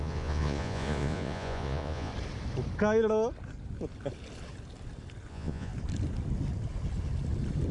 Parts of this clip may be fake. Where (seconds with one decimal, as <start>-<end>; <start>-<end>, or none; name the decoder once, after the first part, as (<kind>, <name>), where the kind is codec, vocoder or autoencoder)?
0.0-2.1 (vocoder, Vocos); 5.3-5.7